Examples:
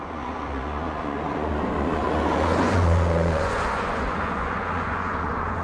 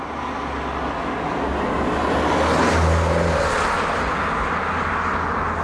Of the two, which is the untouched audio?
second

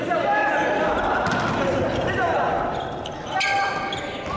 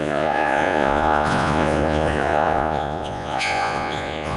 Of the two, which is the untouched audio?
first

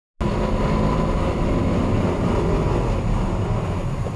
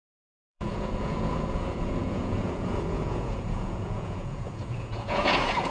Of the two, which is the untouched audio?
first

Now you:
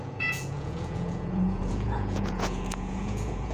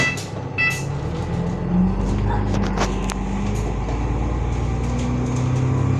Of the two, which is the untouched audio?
second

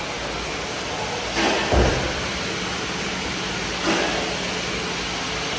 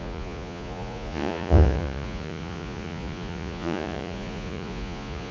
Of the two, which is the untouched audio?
first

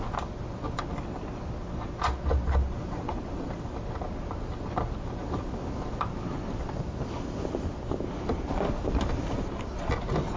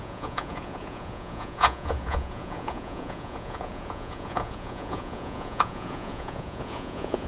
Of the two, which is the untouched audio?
first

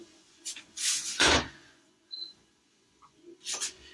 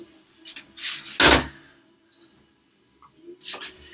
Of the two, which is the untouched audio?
second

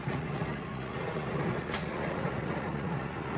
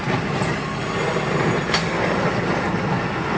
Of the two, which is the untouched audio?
second